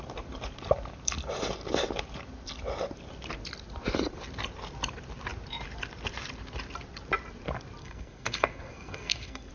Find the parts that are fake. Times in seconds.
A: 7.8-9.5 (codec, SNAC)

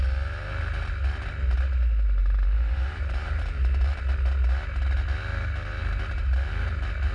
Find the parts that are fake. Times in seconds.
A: 2.2-4.0 (vocoder, BigVGAN v2)

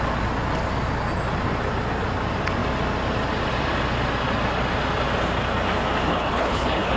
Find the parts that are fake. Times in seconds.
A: 6.1-7.0 (codec, HILCodec)

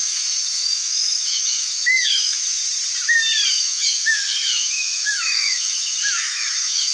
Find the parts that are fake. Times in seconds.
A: 0.0-2.6 (autoencoder, DAC-VAE); 3.5-6.9